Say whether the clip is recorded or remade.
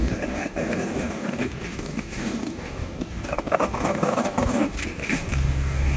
remade